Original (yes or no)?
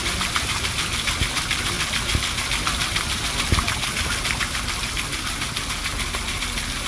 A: no